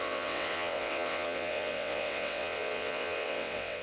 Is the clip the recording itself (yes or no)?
no